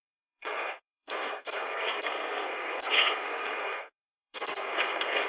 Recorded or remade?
remade